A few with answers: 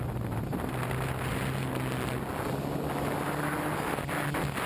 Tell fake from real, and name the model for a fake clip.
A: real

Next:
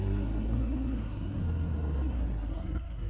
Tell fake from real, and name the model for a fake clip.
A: fake, codec, SNAC